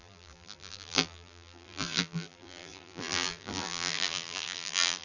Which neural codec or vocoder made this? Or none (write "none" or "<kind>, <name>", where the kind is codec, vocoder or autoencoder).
vocoder, BigVGAN v2